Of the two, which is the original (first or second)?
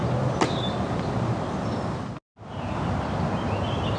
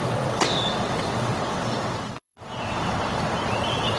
first